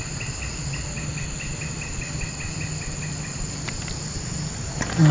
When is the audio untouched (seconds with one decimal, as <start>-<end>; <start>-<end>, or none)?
0.0-1.1; 4.2-5.1